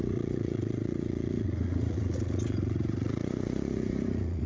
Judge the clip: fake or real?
fake